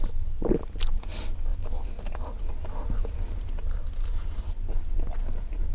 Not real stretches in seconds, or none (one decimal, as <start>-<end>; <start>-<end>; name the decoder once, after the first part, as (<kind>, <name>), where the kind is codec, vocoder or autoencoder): none